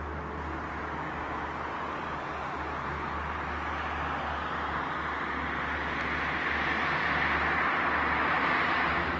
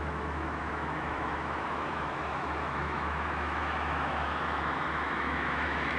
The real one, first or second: first